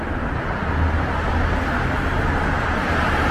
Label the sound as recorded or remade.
recorded